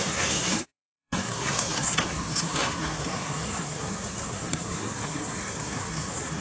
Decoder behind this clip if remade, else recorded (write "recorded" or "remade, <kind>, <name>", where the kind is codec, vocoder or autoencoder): remade, codec, SNAC